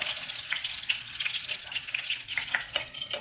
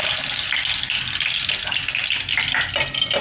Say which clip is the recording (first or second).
second